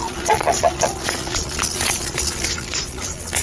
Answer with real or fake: fake